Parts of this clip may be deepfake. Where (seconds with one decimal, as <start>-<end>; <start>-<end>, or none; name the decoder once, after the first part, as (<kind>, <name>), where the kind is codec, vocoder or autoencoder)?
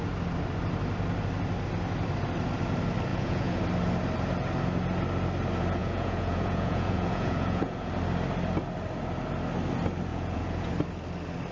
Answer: 3.1-3.6 (vocoder, Vocos); 5.8-7.9; 10.1-10.7